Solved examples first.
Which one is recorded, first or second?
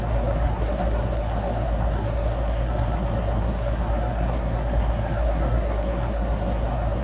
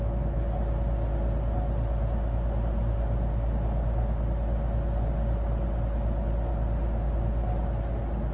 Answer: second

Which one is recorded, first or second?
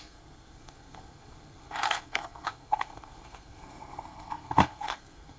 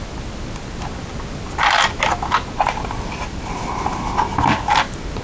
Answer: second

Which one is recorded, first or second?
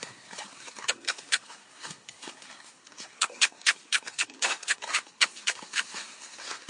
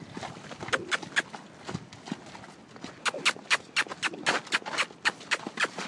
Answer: second